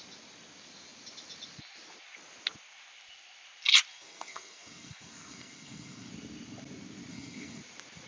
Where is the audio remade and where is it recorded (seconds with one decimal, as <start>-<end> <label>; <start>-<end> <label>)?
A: 0.0-3.9 recorded; 3.9-6.1 remade; 6.1-7.1 recorded; 7.1-7.6 remade; 7.6-8.1 recorded